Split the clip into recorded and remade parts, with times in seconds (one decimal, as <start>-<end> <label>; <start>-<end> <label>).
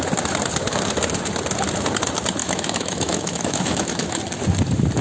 0.0-2.4 recorded; 2.4-4.2 remade; 4.2-5.0 recorded